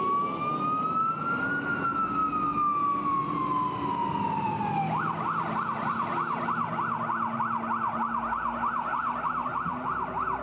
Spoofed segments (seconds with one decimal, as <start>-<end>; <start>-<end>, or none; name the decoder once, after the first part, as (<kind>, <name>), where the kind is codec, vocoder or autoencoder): none